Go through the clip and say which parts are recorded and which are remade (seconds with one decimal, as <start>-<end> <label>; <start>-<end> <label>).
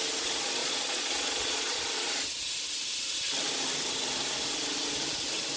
0.0-0.6 recorded; 0.6-1.8 remade; 1.8-5.6 recorded